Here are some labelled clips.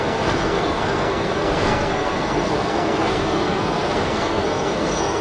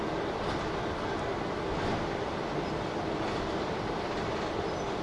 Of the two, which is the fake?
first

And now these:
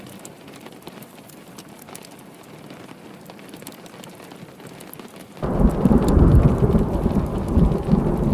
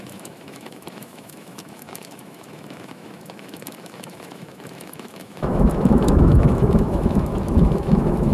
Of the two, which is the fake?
second